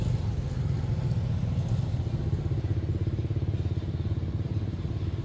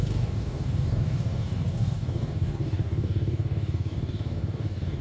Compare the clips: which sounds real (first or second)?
first